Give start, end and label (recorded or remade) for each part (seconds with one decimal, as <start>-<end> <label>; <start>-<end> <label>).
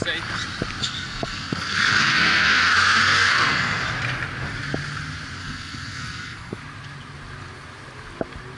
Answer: 0.0-0.8 recorded; 0.8-3.9 remade; 3.9-5.4 recorded; 5.4-6.6 remade; 6.6-8.6 recorded